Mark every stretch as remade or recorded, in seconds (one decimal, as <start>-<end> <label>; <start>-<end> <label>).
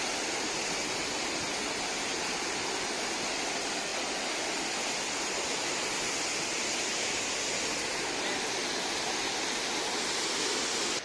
0.0-11.0 recorded